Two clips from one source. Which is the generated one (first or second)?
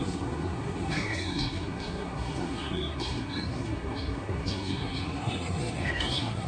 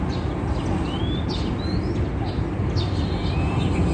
first